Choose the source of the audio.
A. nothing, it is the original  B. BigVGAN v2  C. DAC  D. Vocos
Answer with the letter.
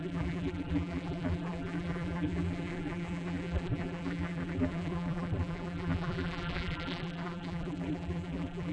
B